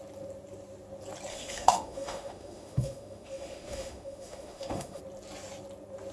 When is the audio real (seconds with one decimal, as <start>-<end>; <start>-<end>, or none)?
0.0-1.3; 5.0-6.1